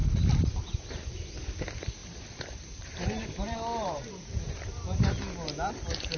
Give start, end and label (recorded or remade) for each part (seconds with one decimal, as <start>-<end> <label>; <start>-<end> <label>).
0.0-2.0 recorded; 2.0-5.7 remade; 5.7-6.2 recorded